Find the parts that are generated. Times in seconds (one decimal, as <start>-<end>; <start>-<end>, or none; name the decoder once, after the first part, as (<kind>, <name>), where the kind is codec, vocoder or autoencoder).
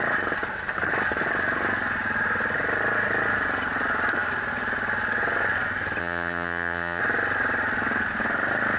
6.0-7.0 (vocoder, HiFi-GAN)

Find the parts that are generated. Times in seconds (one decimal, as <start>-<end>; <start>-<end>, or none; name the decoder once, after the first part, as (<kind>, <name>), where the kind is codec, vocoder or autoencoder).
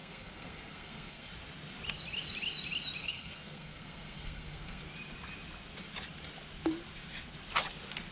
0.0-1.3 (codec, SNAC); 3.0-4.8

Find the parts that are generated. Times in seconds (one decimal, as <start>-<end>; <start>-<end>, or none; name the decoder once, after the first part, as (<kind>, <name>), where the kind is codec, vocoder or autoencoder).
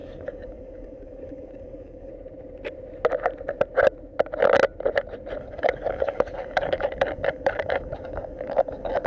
0.0-2.1 (codec, DAC); 5.4-9.1